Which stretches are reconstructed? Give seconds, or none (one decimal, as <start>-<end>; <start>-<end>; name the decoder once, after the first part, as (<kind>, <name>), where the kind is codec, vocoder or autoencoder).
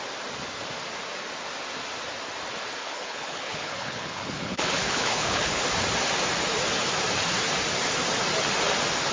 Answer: 2.8-5.6 (codec, HILCodec)